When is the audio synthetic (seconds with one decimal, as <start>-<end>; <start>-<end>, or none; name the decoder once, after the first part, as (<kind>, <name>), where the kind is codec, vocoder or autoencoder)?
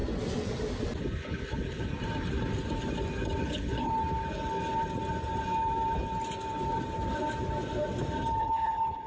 1.0-1.9 (codec, HILCodec); 3.4-3.9; 8.4-9.1